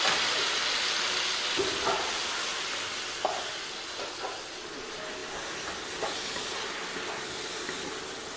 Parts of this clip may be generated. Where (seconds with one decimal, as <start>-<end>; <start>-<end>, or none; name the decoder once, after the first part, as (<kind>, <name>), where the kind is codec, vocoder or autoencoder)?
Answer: none